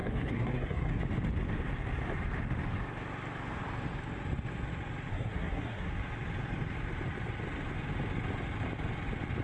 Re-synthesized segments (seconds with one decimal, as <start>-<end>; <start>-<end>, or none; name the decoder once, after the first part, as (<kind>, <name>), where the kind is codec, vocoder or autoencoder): 0.0-1.0 (codec, SNAC); 5.1-5.9